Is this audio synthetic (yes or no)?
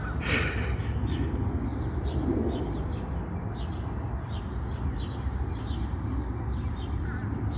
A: no